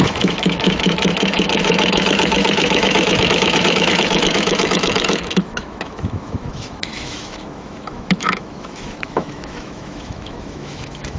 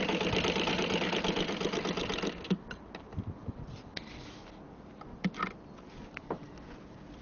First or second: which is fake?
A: first